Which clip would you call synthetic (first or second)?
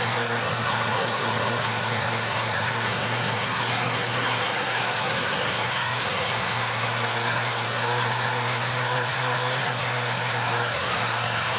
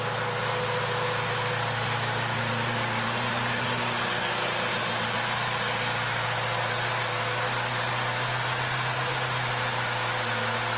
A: first